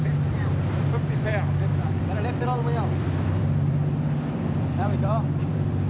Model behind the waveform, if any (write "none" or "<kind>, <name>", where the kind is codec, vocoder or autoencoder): vocoder, BigVGAN v2